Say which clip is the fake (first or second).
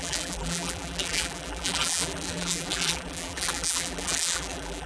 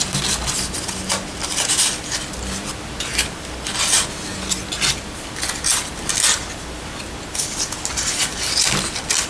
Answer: first